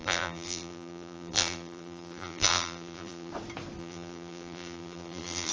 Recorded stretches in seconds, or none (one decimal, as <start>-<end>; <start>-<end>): 3.3-3.8